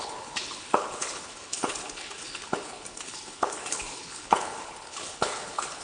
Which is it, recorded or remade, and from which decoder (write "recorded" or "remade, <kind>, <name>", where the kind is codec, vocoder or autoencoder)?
remade, codec, HILCodec